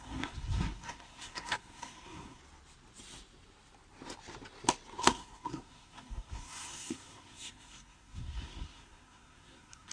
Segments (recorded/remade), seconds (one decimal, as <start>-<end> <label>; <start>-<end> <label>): 0.0-2.4 remade; 2.4-5.0 recorded; 5.0-9.9 remade

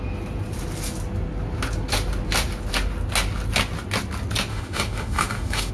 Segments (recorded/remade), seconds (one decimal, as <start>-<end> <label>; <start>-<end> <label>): 0.0-4.5 recorded; 4.5-5.7 remade

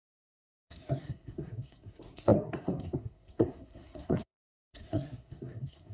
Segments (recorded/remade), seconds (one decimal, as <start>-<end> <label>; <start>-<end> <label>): 0.0-5.9 remade

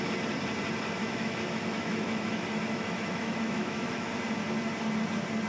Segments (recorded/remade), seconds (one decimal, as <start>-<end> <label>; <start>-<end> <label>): 0.0-1.0 recorded; 1.0-4.1 remade; 4.1-5.5 recorded

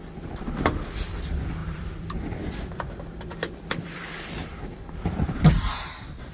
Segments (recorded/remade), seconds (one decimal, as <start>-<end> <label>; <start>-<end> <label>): 0.0-1.6 recorded; 1.6-5.4 remade; 5.4-6.3 recorded

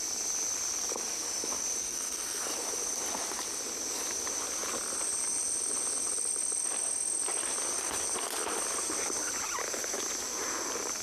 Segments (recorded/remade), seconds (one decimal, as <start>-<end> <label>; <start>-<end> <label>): 0.0-1.8 recorded; 1.8-2.4 remade; 2.4-11.0 recorded

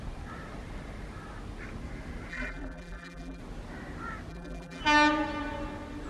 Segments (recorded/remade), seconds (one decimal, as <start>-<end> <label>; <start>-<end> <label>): 0.0-2.3 recorded; 2.3-3.4 remade; 3.4-4.3 recorded; 4.3-4.8 remade; 4.8-6.1 recorded